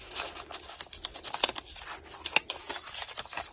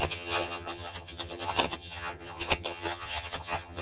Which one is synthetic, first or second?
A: second